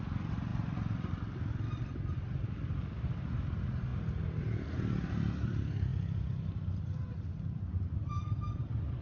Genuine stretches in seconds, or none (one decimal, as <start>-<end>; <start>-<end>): 3.9-4.4; 5.9-7.7